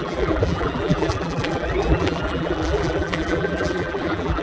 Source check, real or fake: fake